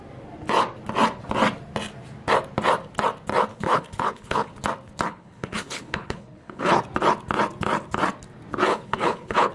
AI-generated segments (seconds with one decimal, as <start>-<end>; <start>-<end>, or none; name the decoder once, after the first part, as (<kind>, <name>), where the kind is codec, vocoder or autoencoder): 3.5-4.5 (codec, HILCodec); 5.1-6.8; 8.7-9.5